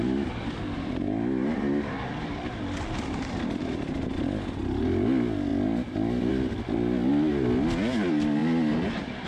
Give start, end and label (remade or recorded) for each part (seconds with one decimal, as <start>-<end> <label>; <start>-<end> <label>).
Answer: 0.0-9.3 recorded